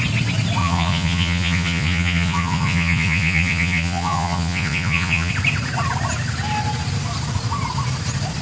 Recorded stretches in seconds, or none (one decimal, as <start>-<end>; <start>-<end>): 0.0-0.6; 5.3-8.4

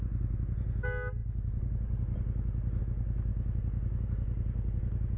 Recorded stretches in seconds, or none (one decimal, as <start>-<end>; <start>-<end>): 0.0-5.2

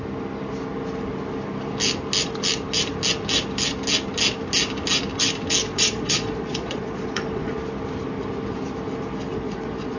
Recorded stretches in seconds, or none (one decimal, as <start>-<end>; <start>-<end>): 0.0-5.6; 7.6-9.3